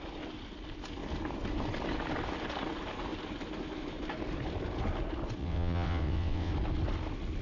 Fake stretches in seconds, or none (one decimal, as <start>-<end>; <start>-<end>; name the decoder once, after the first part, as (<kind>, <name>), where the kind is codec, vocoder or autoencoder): 5.4-6.5 (vocoder, WaveNeXt)